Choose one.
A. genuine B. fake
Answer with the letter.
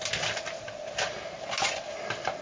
A